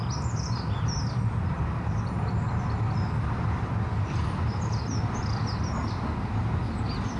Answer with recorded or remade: recorded